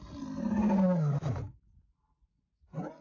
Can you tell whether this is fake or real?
real